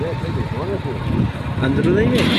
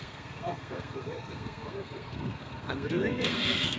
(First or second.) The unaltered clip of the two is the first